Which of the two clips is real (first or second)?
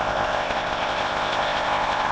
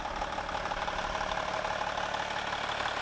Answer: second